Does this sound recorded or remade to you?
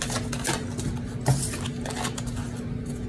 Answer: recorded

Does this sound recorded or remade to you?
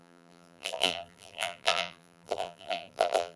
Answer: remade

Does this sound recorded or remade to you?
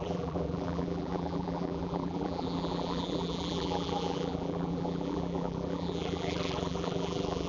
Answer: remade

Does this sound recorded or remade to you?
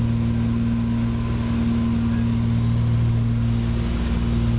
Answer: recorded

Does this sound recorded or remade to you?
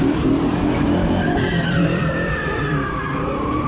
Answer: remade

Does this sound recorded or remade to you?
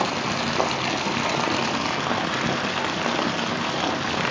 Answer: recorded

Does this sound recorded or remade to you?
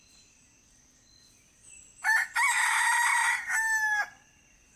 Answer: recorded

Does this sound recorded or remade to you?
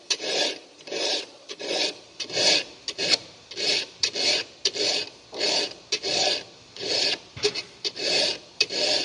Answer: remade